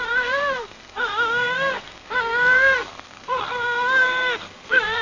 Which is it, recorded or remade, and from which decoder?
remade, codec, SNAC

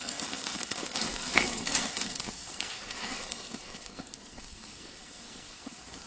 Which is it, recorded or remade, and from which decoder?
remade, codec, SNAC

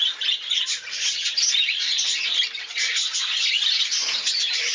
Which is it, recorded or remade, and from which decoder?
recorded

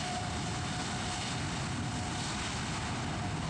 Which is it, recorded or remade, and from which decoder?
recorded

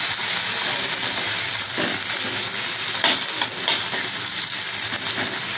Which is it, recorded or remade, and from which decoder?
recorded